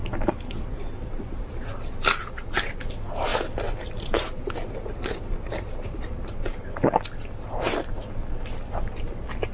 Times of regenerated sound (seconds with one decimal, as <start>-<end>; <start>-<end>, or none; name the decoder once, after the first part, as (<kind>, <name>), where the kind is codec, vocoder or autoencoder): 0.0-2.2 (vocoder, BigVGAN v2); 3.3-6.0